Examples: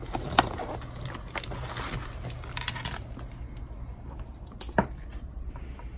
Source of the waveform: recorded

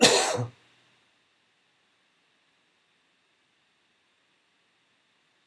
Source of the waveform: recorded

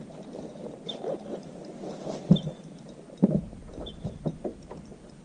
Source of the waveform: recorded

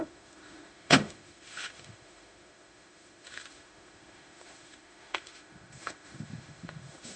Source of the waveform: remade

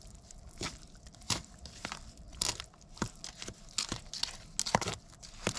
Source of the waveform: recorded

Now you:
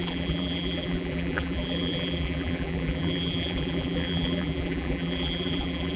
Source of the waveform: remade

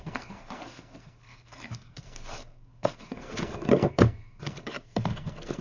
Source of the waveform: remade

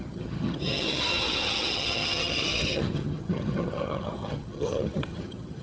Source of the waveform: remade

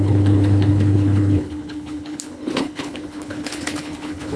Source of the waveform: remade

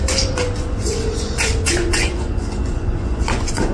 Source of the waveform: remade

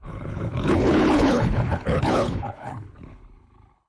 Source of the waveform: remade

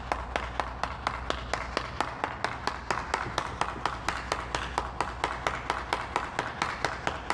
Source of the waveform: recorded